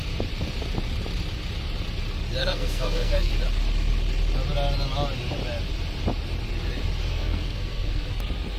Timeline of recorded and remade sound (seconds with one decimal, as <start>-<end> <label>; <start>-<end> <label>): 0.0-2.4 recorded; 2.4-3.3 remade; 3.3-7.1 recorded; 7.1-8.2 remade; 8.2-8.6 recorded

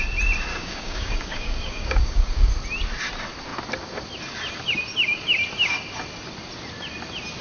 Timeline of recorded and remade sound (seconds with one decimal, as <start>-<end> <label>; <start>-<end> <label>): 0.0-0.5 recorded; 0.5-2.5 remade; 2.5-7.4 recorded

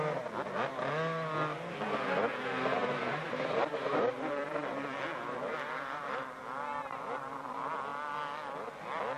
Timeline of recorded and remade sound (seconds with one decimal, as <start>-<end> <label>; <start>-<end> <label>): 0.0-2.8 recorded; 2.8-6.4 remade; 6.4-9.2 recorded

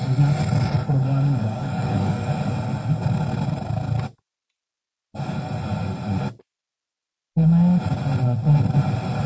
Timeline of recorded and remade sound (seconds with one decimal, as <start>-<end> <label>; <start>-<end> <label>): 0.0-1.4 recorded; 1.4-2.3 remade; 2.3-9.3 recorded

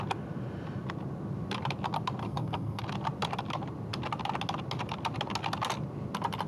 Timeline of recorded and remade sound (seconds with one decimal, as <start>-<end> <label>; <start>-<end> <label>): 0.0-2.2 recorded; 2.2-2.8 remade; 2.8-6.5 recorded

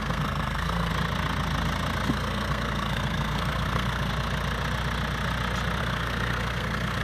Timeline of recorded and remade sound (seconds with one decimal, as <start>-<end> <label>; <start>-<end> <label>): 0.0-0.9 remade; 0.9-2.1 recorded; 2.1-4.1 remade; 4.1-5.8 recorded; 5.8-7.0 remade

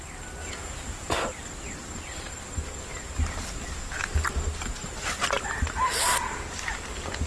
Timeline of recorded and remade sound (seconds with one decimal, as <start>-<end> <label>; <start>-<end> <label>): 0.0-0.4 recorded; 0.4-1.1 remade; 1.1-7.3 recorded

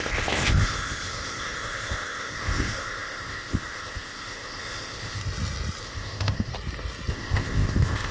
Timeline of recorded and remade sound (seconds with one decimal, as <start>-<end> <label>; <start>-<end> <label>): 0.0-5.2 remade; 5.2-5.8 recorded; 5.8-6.5 remade; 6.5-7.1 recorded; 7.1-8.1 remade